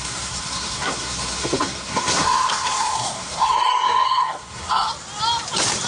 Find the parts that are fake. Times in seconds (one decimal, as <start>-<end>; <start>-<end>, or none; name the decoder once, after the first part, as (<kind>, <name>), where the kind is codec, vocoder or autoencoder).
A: 0.0-4.9 (codec, SNAC)